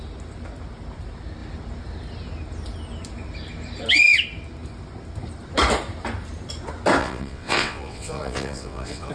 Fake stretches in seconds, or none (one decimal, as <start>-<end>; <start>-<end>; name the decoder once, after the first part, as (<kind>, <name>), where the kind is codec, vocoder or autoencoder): 7.0-9.1 (vocoder, WaveNeXt)